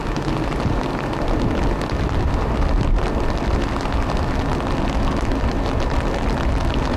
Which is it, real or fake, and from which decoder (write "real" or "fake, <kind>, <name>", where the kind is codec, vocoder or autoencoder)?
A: real